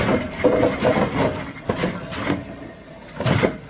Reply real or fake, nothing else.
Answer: real